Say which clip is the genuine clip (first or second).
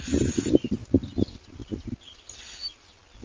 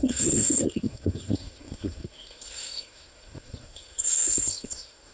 first